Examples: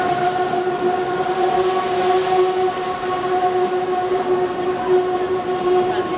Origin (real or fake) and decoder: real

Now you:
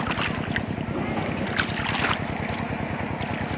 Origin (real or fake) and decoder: real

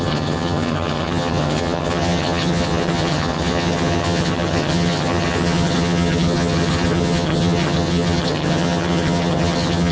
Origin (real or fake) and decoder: fake, vocoder, HiFi-GAN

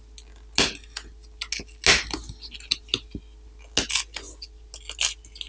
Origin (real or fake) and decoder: real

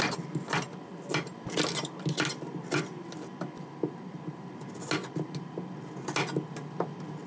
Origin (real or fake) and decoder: real